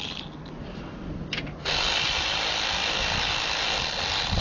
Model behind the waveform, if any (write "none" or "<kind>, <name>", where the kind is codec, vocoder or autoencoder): none